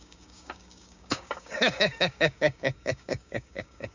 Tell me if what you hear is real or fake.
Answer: fake